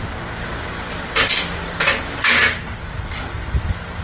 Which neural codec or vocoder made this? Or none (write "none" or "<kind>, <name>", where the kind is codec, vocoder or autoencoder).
none